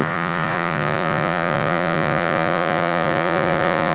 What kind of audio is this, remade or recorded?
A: remade